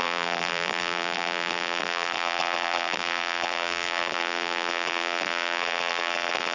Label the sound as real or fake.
fake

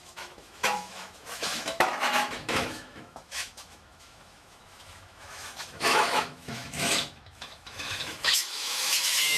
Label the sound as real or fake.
fake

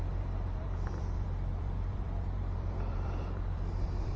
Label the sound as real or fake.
fake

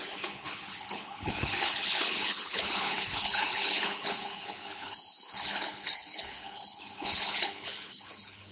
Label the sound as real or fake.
fake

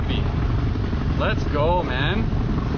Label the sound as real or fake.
real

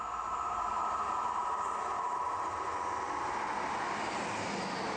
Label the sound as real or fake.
real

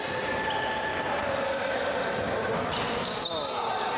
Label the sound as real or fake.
real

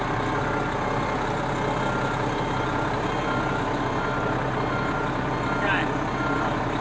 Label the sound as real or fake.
real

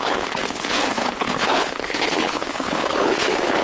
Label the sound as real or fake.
fake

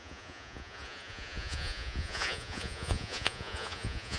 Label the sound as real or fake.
fake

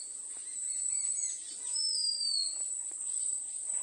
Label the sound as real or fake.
real